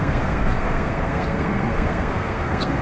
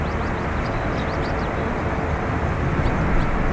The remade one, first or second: first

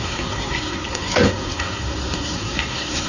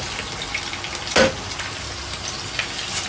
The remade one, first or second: first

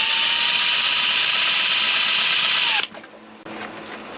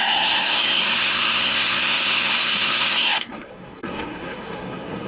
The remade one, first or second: second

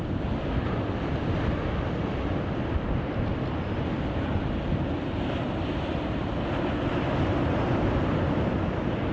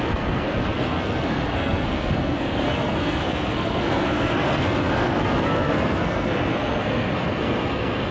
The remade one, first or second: second